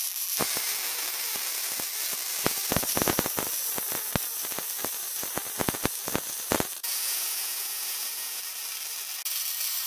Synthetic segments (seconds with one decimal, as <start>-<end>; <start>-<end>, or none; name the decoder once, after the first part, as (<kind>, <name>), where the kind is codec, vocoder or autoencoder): 6.8-8.4 (vocoder, Vocos)